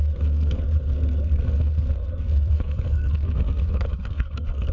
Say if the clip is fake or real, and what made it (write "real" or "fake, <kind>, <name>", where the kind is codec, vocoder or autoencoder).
fake, codec, SNAC